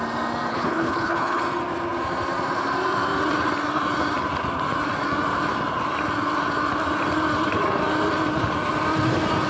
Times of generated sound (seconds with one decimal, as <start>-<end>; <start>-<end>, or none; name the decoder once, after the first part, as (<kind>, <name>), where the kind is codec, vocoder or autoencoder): 0.5-1.4 (codec, HILCodec)